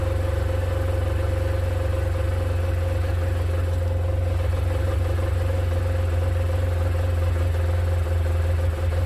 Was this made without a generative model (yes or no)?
yes